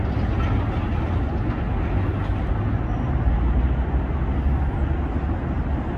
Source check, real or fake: real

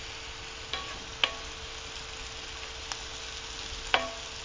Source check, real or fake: real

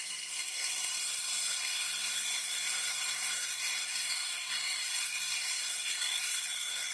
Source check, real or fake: fake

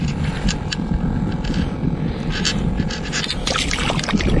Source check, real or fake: real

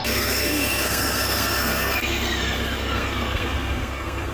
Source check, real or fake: fake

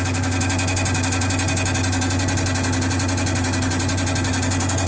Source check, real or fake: real